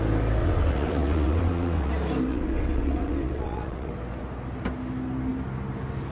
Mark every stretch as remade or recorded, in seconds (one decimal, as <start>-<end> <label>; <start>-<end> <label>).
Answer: 0.0-0.4 recorded; 0.4-1.9 remade; 1.9-2.3 recorded; 2.3-3.9 remade; 3.9-6.1 recorded